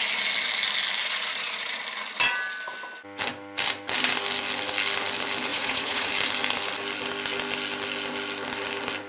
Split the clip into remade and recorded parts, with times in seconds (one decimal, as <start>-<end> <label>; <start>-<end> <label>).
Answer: 0.0-1.0 recorded; 1.0-1.8 remade; 1.8-5.5 recorded; 5.5-6.1 remade; 6.1-9.1 recorded